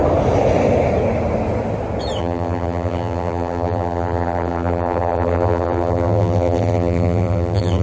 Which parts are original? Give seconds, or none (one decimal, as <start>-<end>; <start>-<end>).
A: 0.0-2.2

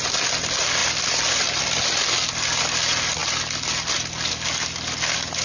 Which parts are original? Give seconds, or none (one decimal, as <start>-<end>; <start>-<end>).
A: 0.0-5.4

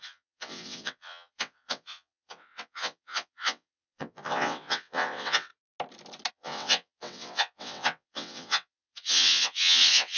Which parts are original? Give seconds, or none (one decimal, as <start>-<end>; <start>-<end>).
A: 5.5-6.3

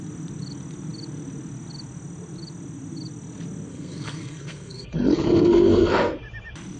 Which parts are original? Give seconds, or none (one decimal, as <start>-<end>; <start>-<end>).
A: 0.0-3.7; 6.2-6.8

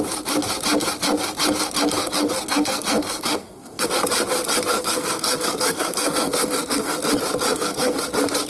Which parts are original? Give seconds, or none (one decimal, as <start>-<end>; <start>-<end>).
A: 0.0-2.0; 3.9-4.7; 7.0-7.5; 8.0-8.5

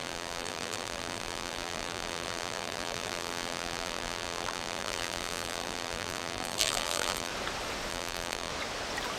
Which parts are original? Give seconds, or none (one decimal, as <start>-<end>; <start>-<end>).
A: 7.3-7.9; 8.5-9.2

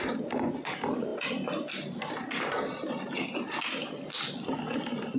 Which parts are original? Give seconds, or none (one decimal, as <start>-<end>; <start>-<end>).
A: 0.0-5.2